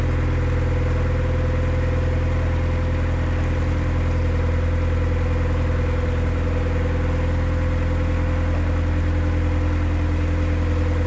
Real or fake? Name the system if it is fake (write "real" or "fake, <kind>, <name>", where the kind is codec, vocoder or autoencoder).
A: real